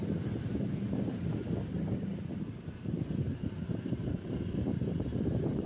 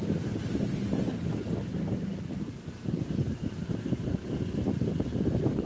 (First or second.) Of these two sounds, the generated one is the first